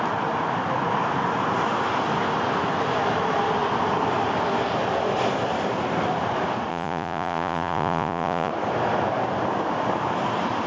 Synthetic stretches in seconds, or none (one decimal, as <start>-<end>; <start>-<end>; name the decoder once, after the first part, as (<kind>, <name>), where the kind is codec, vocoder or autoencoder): 6.7-8.5 (vocoder, Vocos)